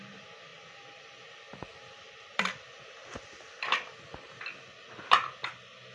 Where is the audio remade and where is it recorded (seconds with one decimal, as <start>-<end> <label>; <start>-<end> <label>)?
0.0-0.5 recorded; 0.5-4.0 remade; 4.0-5.9 recorded